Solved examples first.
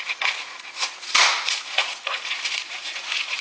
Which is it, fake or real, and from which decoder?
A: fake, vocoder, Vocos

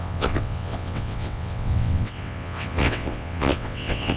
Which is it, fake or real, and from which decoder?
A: fake, vocoder, WaveNeXt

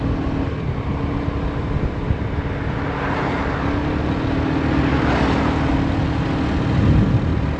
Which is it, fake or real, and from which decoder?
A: real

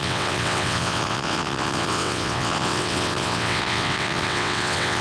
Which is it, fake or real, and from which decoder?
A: fake, vocoder, WaveNeXt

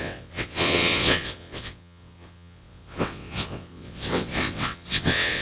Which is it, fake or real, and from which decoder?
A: fake, vocoder, WaveNeXt